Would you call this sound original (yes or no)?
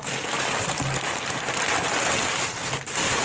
yes